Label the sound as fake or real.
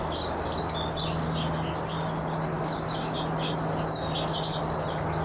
real